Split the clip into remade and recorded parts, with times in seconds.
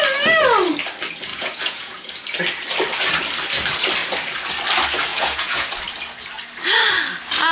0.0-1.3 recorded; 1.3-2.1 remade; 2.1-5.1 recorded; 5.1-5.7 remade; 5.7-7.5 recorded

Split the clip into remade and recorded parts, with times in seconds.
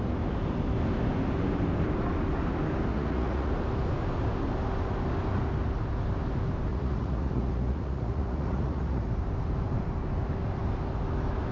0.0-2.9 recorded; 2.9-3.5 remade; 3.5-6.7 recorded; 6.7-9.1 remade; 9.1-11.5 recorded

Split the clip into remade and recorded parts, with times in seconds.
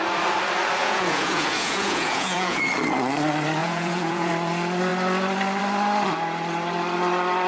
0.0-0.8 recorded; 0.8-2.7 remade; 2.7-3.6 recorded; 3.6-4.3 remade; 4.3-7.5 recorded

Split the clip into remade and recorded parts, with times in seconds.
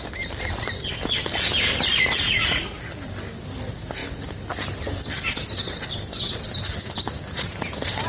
0.0-1.9 recorded; 1.9-2.8 remade; 2.8-8.1 recorded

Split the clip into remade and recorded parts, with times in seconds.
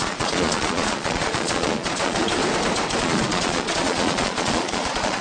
0.0-2.4 remade; 2.4-3.0 recorded; 3.0-5.2 remade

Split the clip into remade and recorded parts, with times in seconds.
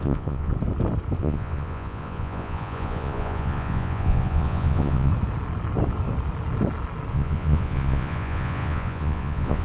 0.0-0.5 remade; 0.5-1.2 recorded; 1.2-5.1 remade; 5.1-7.1 recorded; 7.1-9.6 remade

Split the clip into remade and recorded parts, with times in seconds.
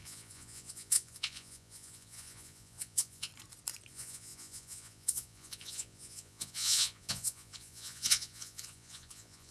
0.0-3.3 remade; 3.3-3.9 recorded; 3.9-9.5 remade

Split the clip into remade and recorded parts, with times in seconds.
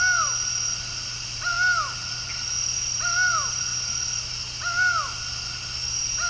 0.0-6.3 recorded